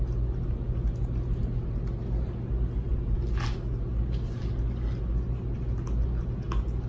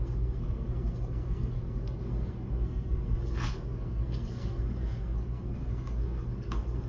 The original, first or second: first